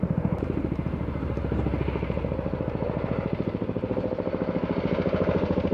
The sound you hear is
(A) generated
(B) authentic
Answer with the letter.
B